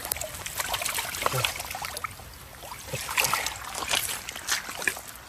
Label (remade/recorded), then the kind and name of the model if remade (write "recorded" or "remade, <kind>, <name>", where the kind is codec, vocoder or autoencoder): recorded